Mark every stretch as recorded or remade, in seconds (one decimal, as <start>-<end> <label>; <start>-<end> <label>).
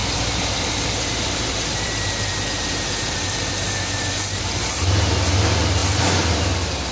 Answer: 0.0-3.5 remade; 3.5-6.9 recorded